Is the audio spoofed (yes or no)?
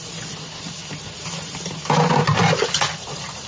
no